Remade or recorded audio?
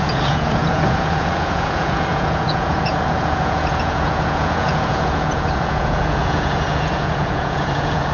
remade